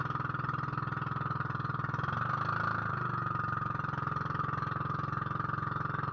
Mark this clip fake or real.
real